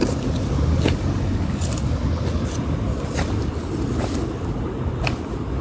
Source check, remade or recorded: recorded